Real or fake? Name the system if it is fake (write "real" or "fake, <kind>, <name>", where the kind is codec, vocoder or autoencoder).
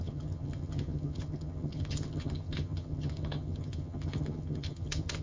fake, vocoder, HiFi-GAN